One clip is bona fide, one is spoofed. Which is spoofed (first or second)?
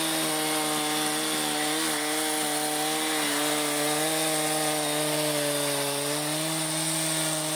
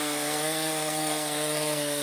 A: second